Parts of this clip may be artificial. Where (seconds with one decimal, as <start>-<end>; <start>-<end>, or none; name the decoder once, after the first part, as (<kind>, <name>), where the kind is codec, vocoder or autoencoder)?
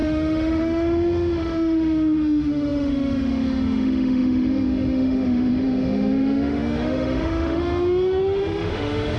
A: 0.0-9.2 (autoencoder, DAC-VAE)